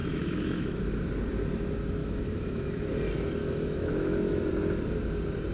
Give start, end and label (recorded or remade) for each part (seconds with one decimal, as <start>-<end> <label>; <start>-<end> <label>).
0.0-0.8 remade; 0.8-2.0 recorded; 2.0-2.9 remade; 2.9-3.4 recorded; 3.4-4.5 remade; 4.5-5.5 recorded